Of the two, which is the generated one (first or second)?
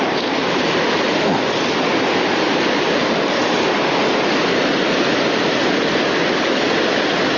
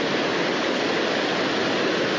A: first